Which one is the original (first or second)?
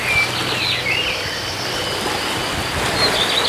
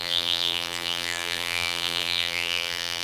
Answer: first